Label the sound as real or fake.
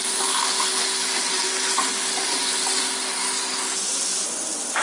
real